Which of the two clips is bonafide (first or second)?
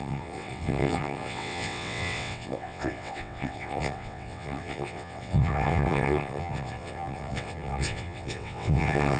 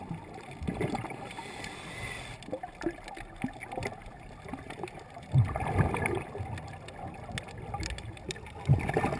second